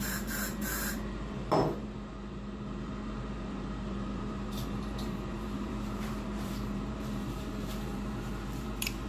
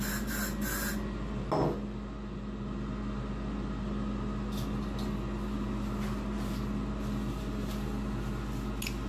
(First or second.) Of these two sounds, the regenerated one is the first